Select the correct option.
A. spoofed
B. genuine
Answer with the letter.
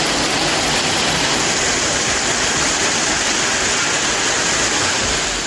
B